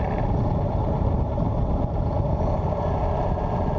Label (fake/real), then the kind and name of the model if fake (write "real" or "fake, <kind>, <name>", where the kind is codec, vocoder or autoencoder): real